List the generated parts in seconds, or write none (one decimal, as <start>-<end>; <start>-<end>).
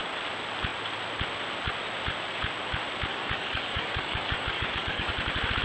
3.1-5.1